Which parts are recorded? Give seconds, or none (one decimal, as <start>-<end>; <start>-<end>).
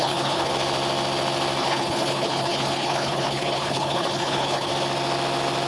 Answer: 0.5-1.6; 4.7-5.7